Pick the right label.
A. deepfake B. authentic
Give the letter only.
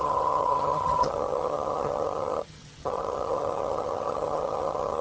A